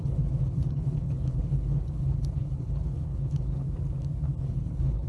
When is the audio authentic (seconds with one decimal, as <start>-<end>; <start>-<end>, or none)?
3.6-4.4